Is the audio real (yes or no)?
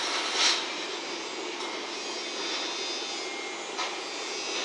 yes